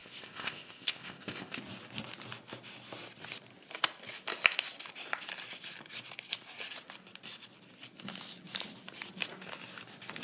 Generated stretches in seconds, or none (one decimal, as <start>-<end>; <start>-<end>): 0.0-1.6